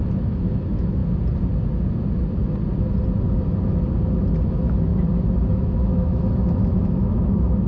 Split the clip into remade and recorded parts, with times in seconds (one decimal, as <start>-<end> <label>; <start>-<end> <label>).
0.0-1.0 remade; 1.0-4.5 recorded; 4.5-4.9 remade; 4.9-5.5 recorded; 5.5-7.7 remade